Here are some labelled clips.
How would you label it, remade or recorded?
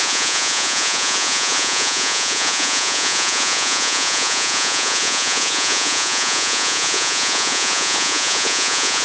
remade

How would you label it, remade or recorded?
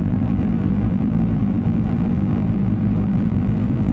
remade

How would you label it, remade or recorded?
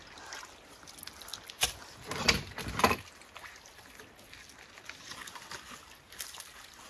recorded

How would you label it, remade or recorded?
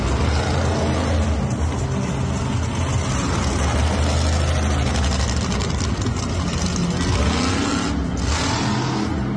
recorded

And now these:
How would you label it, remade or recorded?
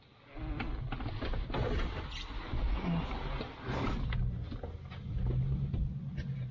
recorded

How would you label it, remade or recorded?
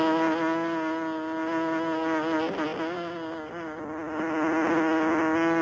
recorded